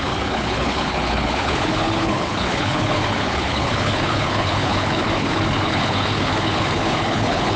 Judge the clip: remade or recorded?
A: remade